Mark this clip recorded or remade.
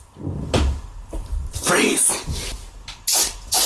recorded